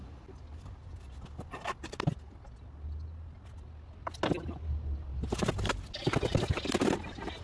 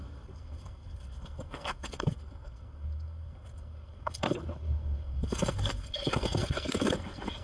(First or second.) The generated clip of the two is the second